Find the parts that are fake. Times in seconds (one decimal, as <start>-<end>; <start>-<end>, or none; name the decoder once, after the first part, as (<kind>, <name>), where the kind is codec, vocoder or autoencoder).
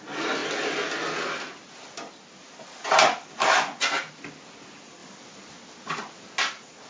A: none